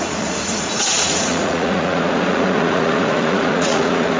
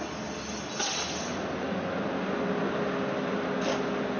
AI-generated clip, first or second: first